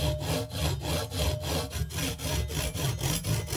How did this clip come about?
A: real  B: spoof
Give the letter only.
A